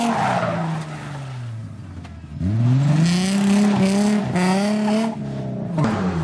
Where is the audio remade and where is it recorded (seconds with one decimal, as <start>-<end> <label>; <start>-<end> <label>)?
0.0-6.2 recorded